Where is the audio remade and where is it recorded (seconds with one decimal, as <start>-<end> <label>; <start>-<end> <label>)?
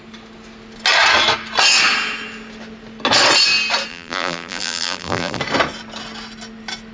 0.0-3.9 recorded; 3.9-5.4 remade; 5.4-6.9 recorded